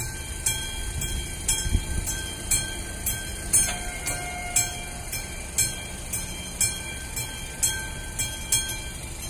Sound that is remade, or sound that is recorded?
recorded